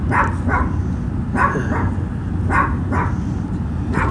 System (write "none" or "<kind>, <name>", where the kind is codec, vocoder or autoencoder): none